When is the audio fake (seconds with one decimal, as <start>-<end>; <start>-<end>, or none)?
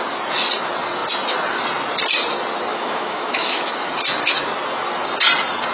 2.7-3.9